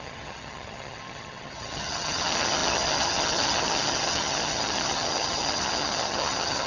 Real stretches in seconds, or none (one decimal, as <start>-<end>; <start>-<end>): none

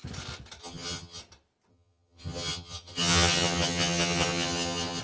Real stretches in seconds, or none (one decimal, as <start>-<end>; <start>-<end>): 0.0-0.6; 1.2-1.7

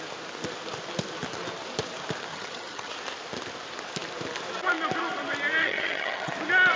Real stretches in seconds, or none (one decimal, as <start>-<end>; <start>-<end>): 0.0-2.3; 2.9-5.6; 6.3-6.8

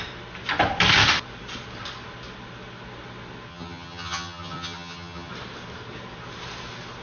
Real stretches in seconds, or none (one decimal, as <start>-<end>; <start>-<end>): 0.0-3.5; 5.3-7.0

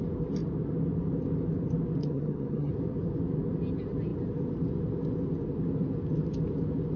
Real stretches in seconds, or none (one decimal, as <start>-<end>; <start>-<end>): 0.0-2.0; 2.7-7.0

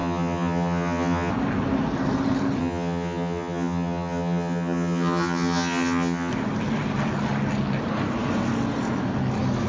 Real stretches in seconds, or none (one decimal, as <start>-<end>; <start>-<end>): 1.3-2.6; 6.3-9.7